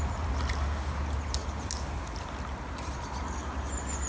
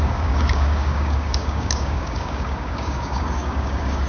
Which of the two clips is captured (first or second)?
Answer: first